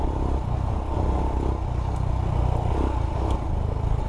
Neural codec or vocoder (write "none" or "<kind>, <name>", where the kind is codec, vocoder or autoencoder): none